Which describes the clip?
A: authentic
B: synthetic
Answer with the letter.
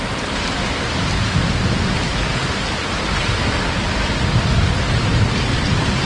A